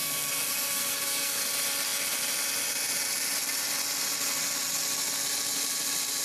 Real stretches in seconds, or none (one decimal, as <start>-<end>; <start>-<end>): 1.4-6.2